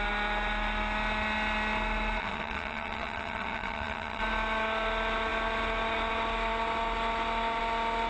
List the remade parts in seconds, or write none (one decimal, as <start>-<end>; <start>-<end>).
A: 2.2-4.2